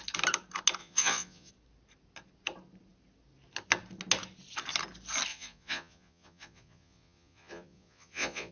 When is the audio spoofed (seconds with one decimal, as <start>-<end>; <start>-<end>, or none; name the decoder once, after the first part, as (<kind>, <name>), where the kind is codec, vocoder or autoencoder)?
0.8-1.5 (vocoder, Vocos); 5.3-8.5